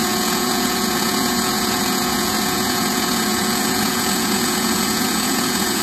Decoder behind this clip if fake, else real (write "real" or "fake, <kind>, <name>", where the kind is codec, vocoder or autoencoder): fake, vocoder, Vocos